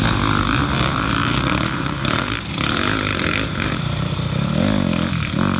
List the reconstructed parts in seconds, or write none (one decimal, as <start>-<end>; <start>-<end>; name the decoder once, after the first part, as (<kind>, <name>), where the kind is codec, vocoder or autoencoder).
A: 1.2-2.2 (vocoder, BigVGAN v2); 3.1-4.0